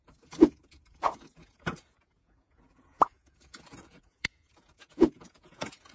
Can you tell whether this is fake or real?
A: fake